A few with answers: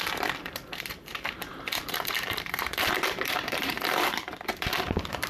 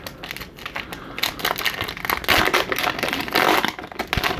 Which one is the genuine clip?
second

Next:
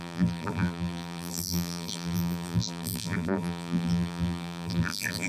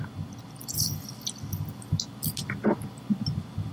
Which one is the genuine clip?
second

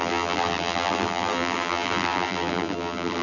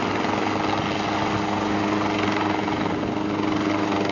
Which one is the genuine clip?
second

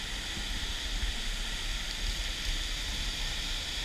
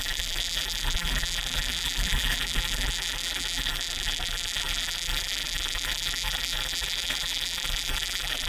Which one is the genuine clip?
first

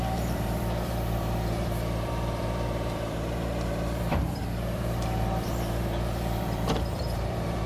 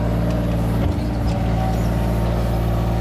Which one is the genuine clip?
second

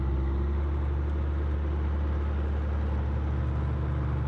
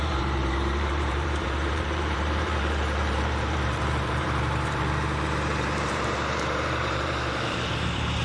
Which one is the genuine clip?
first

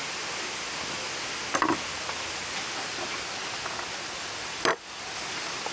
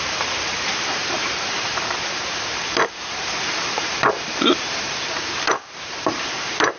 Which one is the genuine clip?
first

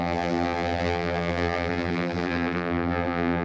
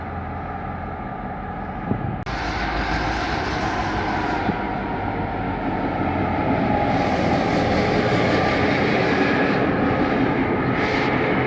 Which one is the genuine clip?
second